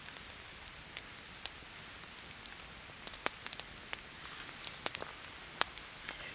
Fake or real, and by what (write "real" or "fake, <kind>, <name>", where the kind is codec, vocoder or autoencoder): real